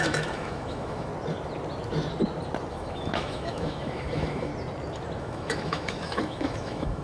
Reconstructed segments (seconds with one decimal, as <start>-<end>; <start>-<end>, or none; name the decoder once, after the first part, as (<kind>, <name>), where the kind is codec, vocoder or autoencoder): 0.0-1.1 (autoencoder, DAC-VAE); 2.7-4.5; 5.2-7.0